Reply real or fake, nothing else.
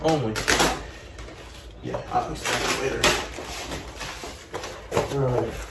real